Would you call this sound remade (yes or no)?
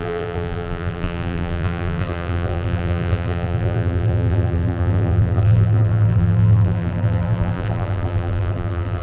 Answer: yes